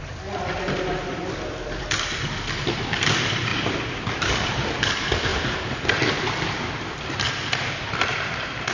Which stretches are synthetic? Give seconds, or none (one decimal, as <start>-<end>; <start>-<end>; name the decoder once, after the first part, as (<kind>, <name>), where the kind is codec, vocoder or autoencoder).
0.0-3.5 (vocoder, BigVGAN v2); 4.1-5.3; 6.2-8.7